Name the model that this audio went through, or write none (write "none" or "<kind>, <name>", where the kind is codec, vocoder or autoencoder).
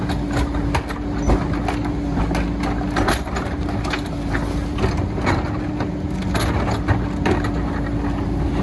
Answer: none